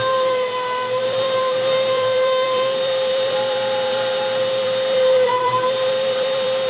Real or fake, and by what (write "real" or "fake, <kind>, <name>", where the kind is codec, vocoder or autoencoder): fake, vocoder, BigVGAN v2